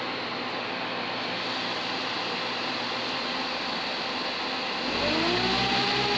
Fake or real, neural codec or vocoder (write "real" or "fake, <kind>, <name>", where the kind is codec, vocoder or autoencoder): real